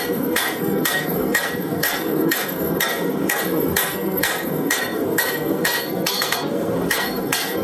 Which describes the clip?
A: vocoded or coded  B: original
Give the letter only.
A